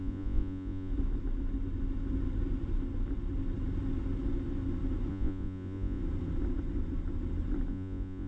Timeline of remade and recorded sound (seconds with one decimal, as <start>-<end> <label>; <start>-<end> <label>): 0.0-0.9 remade; 0.9-5.1 recorded; 5.1-6.0 remade; 6.0-7.7 recorded; 7.7-8.3 remade